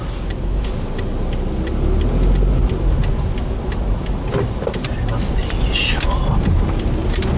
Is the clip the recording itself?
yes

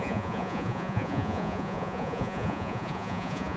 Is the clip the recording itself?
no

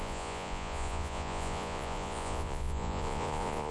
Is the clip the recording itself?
no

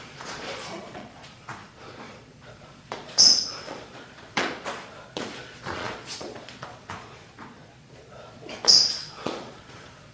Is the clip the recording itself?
no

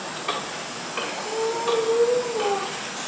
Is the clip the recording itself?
yes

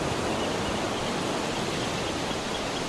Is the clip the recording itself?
yes